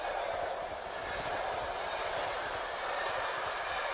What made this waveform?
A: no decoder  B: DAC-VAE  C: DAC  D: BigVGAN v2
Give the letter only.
A